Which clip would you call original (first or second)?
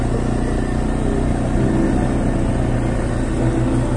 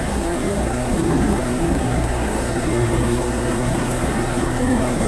first